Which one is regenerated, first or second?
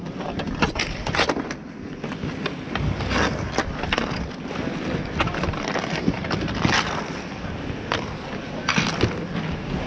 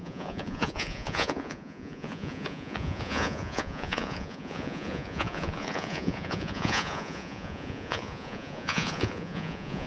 second